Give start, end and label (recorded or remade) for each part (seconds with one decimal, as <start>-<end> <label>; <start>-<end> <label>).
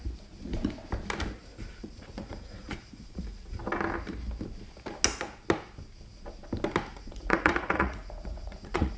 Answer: 0.0-1.4 recorded; 1.4-3.6 remade; 3.6-6.9 recorded; 6.9-9.0 remade